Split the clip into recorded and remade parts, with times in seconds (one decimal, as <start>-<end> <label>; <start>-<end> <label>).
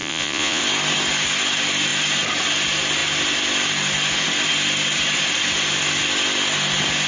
0.0-0.6 remade; 0.6-7.1 recorded